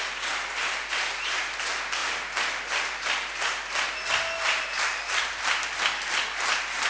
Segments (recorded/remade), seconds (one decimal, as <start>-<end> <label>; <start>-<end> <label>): 0.0-6.9 recorded